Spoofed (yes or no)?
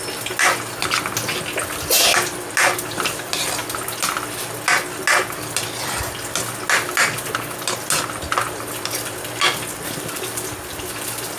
no